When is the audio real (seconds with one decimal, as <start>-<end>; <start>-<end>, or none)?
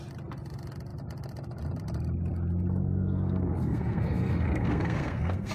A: 0.0-2.8